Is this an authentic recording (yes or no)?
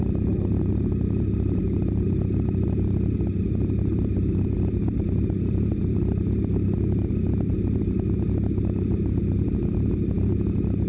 yes